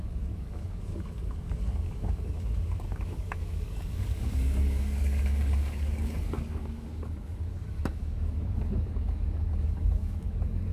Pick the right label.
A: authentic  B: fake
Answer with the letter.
B